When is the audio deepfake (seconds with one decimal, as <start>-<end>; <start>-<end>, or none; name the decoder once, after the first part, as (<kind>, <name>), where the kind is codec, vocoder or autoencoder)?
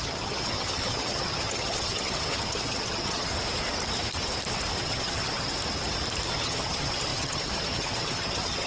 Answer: 0.0-3.3 (vocoder, HiFi-GAN); 4.8-5.5; 6.3-8.7